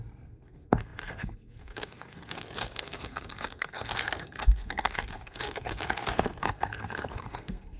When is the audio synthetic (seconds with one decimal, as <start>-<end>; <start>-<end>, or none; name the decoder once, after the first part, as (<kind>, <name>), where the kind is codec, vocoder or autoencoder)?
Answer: 0.0-7.8 (codec, SNAC)